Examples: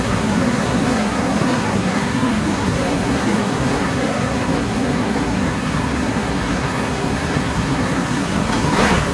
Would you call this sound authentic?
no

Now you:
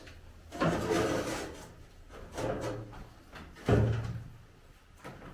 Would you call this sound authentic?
yes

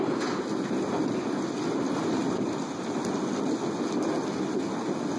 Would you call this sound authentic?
yes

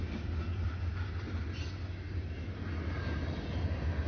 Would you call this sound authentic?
yes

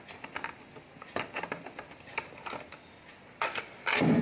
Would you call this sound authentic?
yes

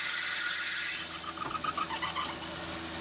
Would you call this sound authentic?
yes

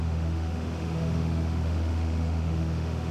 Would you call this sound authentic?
no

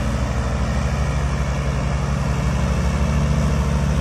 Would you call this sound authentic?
yes